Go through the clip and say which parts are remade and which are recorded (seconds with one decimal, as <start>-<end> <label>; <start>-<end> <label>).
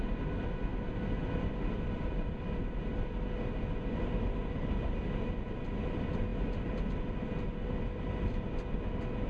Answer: 0.0-0.7 recorded; 0.7-2.8 remade; 2.8-6.3 recorded; 6.3-7.3 remade; 7.3-9.3 recorded